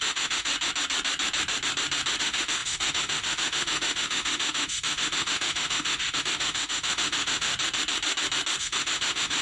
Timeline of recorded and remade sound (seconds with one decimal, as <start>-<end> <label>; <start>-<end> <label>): 0.0-0.5 remade; 0.5-2.2 recorded; 2.2-7.5 remade; 7.5-8.6 recorded; 8.6-9.4 remade

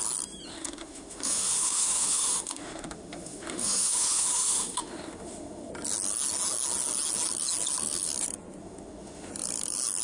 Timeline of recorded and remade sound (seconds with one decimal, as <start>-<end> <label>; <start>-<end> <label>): 0.0-0.5 recorded; 0.5-5.7 remade; 5.7-8.6 recorded; 8.6-9.3 remade; 9.3-10.0 recorded

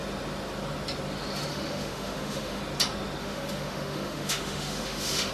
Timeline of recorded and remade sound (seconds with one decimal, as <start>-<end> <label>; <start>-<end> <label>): 0.0-1.5 recorded; 1.5-2.6 remade; 2.6-3.2 recorded; 3.2-5.3 remade

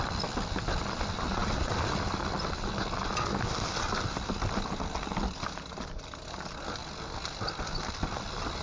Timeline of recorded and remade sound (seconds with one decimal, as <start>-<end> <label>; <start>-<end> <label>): 0.0-8.6 recorded

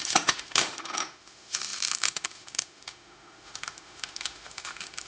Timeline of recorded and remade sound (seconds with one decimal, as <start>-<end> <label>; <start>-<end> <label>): 0.0-5.1 remade